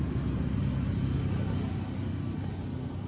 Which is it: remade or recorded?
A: recorded